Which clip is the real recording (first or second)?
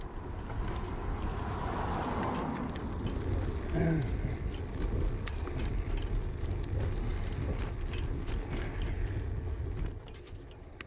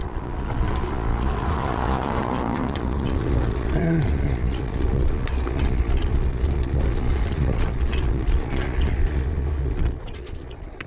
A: first